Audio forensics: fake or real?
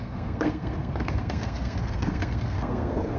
fake